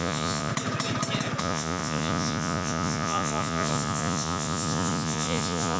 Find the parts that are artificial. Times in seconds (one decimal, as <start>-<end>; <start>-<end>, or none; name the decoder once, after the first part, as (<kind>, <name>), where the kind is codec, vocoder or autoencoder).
0.0-0.5 (vocoder, Vocos); 1.4-5.8

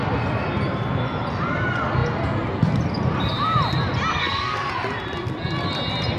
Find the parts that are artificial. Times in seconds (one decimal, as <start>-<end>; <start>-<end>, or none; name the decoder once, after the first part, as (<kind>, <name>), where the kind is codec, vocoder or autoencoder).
4.1-4.7 (codec, SNAC)

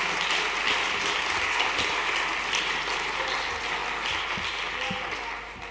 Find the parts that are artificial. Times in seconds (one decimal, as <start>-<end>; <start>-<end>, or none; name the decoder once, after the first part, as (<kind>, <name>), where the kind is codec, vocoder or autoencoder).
none

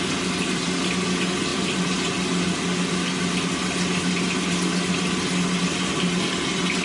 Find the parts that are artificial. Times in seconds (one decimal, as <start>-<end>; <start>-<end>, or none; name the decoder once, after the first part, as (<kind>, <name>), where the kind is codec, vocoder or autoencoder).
none